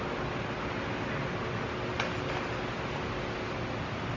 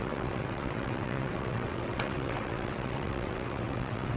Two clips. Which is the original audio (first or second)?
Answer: first